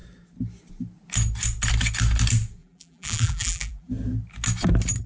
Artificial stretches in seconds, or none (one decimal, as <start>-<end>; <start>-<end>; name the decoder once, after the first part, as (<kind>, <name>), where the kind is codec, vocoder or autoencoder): 2.6-3.9 (vocoder, BigVGAN v2)